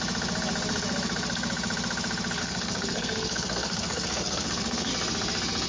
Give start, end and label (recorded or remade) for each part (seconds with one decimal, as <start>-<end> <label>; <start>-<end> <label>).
0.0-2.4 recorded; 2.4-4.9 remade; 4.9-5.7 recorded